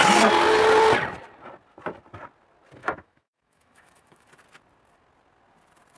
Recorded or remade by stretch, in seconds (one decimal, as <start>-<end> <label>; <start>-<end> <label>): 0.0-2.8 recorded; 2.8-4.3 remade; 4.3-6.0 recorded